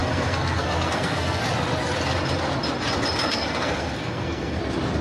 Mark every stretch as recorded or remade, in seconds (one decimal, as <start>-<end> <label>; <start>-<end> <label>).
0.0-1.4 remade; 1.4-3.3 recorded; 3.3-4.6 remade; 4.6-5.0 recorded